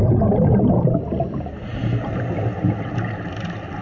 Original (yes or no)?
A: yes